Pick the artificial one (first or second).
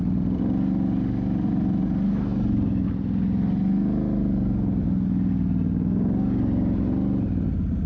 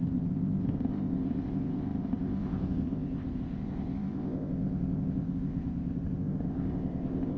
second